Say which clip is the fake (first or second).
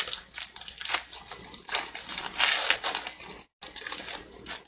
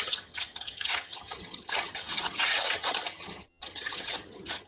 second